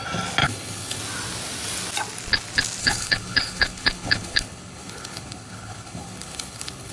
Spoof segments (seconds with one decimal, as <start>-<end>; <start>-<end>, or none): 0.4-1.0; 2.8-6.9